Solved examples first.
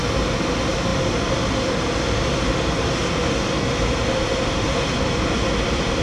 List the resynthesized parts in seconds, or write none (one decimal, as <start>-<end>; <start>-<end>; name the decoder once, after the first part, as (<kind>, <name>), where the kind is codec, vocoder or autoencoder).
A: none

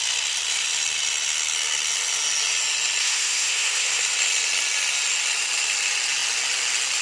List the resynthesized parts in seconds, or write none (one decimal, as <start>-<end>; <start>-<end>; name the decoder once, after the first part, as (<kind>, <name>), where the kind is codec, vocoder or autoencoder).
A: 3.0-4.0 (codec, SNAC)

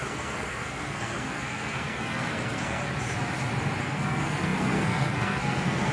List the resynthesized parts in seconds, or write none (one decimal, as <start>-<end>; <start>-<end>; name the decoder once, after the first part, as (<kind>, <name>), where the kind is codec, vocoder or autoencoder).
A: 0.0-2.8 (codec, SNAC); 3.8-5.9

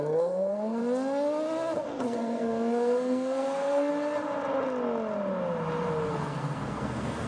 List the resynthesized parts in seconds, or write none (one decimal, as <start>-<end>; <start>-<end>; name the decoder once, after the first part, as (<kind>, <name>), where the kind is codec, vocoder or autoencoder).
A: 0.0-0.8 (codec, SNAC); 1.8-3.9; 6.1-7.3

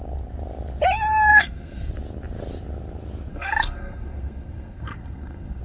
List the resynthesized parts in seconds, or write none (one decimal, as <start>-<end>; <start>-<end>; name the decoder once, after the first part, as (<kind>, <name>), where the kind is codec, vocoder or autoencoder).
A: 1.3-1.9 (codec, SNAC); 3.3-5.6